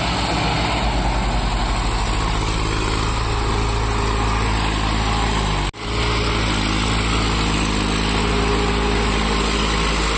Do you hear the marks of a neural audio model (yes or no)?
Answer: no